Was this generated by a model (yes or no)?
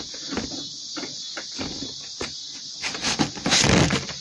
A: no